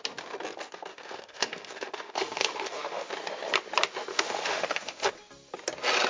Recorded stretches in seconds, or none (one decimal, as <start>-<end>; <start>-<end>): 0.0-0.9; 3.1-4.1; 5.1-6.1